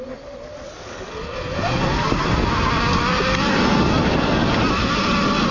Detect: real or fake real